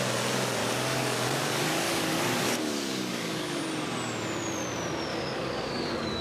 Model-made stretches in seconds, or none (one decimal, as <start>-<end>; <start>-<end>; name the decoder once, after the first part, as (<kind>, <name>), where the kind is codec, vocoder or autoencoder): 0.6-3.6 (codec, DAC); 5.1-6.2